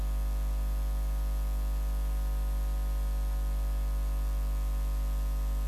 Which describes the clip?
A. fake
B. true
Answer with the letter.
B